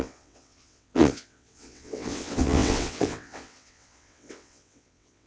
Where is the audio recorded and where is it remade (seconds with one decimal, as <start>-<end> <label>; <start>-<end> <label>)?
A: 0.0-5.3 remade